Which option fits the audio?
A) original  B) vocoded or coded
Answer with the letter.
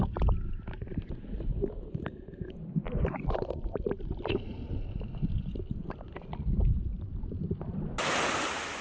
A